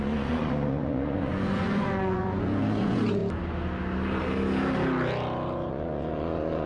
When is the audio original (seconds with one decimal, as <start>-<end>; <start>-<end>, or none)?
3.2-5.7